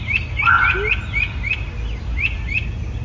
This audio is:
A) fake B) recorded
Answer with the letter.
B